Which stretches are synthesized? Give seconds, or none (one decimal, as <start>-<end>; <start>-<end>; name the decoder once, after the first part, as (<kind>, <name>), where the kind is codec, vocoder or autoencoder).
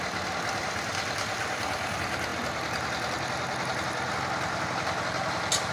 none